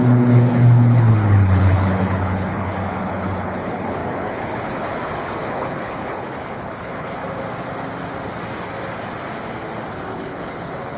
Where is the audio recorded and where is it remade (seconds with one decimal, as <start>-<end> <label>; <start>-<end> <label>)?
0.0-7.2 remade; 7.2-9.9 recorded; 9.9-11.0 remade